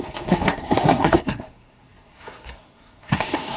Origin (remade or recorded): remade